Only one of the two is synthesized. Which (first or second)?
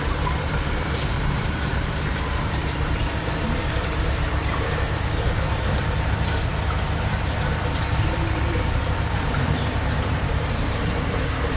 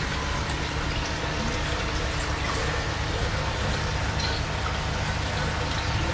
first